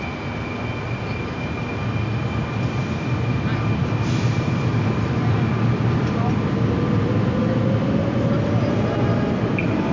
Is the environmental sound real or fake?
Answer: real